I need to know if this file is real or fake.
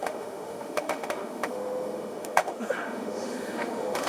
fake